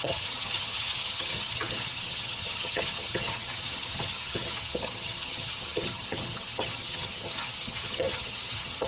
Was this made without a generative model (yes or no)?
no